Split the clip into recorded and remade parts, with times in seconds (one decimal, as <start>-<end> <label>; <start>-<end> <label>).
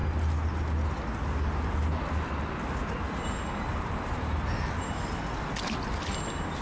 0.0-2.8 recorded; 2.8-5.2 remade; 5.2-6.6 recorded